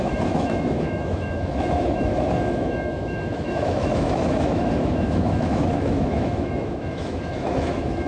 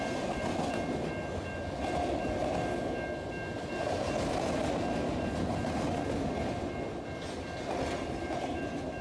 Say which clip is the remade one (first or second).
first